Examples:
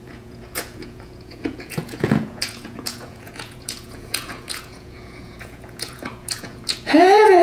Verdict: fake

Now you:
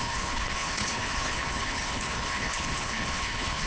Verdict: fake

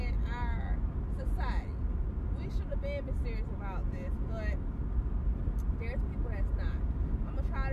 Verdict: real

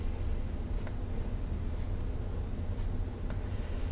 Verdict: real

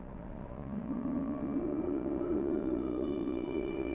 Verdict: fake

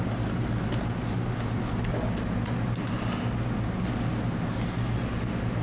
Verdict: real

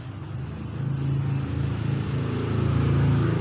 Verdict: real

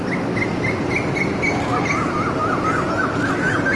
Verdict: real